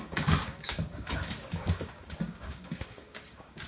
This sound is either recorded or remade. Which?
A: remade